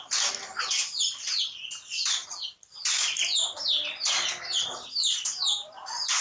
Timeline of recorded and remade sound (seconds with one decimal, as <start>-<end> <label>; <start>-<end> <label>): 0.0-6.2 recorded